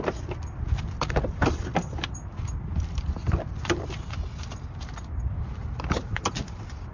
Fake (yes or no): no